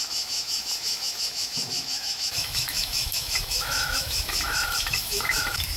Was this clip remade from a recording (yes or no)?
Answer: yes